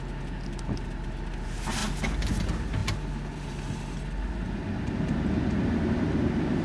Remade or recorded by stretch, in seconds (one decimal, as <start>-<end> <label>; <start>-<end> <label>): 0.0-6.6 recorded